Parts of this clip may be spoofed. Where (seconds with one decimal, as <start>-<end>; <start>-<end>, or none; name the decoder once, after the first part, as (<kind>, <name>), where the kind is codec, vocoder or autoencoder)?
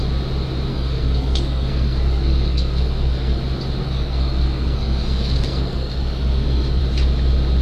0.7-3.4 (codec, SNAC); 3.8-6.8